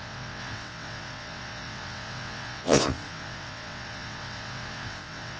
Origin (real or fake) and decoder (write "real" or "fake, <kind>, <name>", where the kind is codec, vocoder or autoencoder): fake, vocoder, WaveNeXt